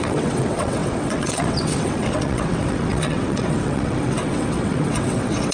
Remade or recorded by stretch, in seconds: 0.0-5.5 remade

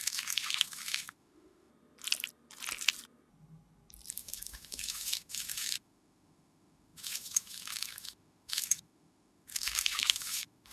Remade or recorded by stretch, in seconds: 0.0-1.7 remade; 1.7-4.1 recorded; 4.1-10.7 remade

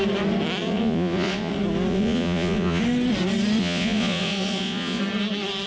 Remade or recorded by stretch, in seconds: 0.0-0.6 recorded; 0.6-1.5 remade; 1.5-1.9 recorded; 1.9-2.8 remade; 2.8-3.6 recorded; 3.6-5.0 remade; 5.0-5.7 recorded

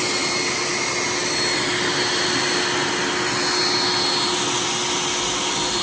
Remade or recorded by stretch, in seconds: 0.0-5.8 recorded

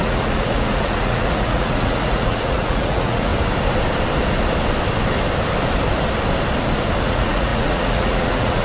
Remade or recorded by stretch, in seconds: 0.0-3.3 remade; 3.3-7.0 recorded; 7.0-8.6 remade

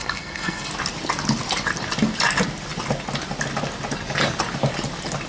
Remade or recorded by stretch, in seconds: 0.0-0.7 remade; 0.7-5.3 recorded

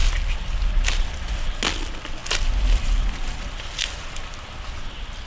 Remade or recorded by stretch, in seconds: 0.0-5.3 recorded

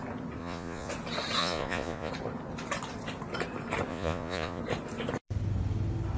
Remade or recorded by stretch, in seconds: 0.0-0.4 recorded; 0.4-0.9 remade; 0.9-1.4 recorded; 1.4-2.1 remade; 2.1-3.9 recorded; 3.9-4.6 remade; 4.6-6.2 recorded